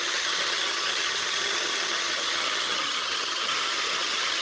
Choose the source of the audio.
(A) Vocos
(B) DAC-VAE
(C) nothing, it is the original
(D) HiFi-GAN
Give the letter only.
D